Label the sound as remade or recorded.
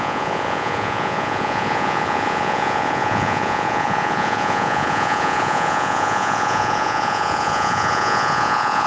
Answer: remade